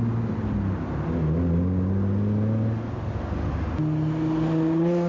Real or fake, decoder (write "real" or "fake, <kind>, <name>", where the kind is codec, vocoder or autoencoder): real